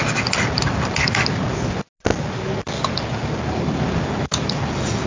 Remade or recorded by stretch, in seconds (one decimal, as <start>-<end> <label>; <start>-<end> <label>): 0.0-5.1 recorded

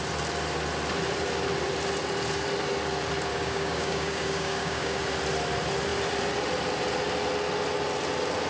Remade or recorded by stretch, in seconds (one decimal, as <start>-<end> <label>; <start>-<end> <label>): 0.0-3.3 recorded; 3.3-5.0 remade; 5.0-8.5 recorded

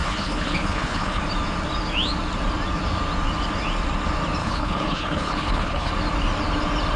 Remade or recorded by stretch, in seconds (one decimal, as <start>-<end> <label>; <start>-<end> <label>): 0.0-1.2 remade; 1.2-4.4 recorded; 4.4-5.9 remade; 5.9-7.0 recorded

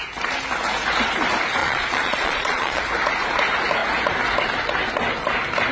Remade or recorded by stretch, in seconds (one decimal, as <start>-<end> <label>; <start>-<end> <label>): 0.0-1.6 recorded; 1.6-2.8 remade; 2.8-5.7 recorded

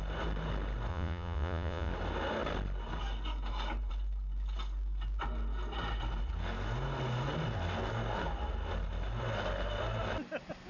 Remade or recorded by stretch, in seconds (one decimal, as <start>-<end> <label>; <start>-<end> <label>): 0.0-0.9 recorded; 0.9-1.9 remade; 1.9-10.7 recorded

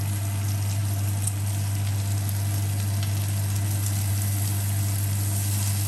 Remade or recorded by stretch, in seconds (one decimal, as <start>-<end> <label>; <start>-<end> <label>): 0.0-5.9 recorded

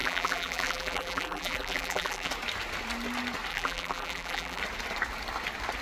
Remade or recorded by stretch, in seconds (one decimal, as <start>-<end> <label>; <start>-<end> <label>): 0.0-2.3 remade; 2.3-3.5 recorded; 3.5-4.6 remade; 4.6-5.8 recorded